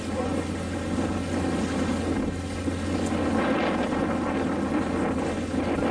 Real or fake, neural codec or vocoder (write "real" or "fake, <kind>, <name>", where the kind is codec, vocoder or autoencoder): real